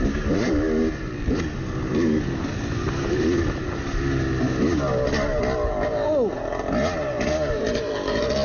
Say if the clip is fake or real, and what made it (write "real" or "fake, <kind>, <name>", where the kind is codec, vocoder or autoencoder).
real